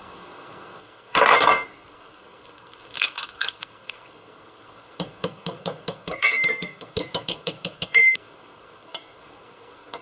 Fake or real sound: fake